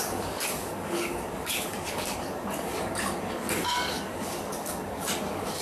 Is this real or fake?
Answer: fake